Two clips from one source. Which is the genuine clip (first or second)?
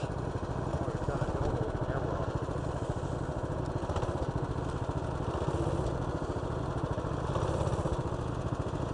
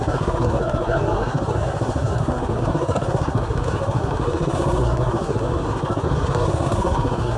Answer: first